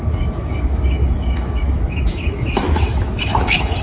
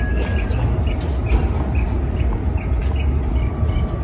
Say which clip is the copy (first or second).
first